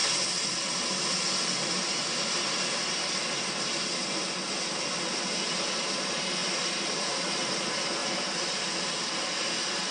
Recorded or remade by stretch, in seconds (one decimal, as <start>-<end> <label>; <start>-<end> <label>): 0.0-0.8 remade; 0.8-6.4 recorded; 6.4-7.6 remade; 7.6-9.9 recorded